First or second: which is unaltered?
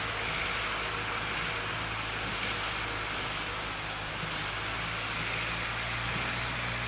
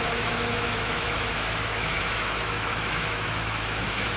first